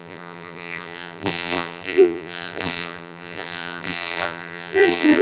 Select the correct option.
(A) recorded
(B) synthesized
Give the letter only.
B